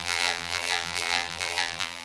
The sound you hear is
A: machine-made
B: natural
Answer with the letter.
A